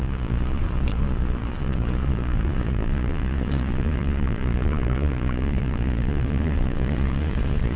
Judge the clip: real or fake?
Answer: fake